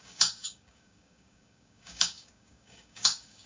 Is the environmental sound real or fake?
fake